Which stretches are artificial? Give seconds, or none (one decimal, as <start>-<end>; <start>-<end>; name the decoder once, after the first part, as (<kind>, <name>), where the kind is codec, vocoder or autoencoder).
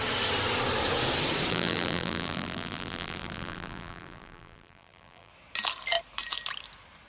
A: 1.5-5.3 (vocoder, BigVGAN v2)